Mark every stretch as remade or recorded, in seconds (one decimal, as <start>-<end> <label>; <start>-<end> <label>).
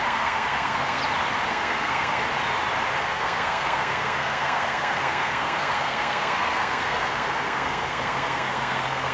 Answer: 0.0-1.0 remade; 1.0-1.5 recorded; 1.5-2.2 remade; 2.2-3.0 recorded; 3.0-9.1 remade